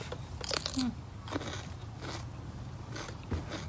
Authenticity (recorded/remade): recorded